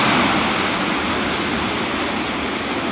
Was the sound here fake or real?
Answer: real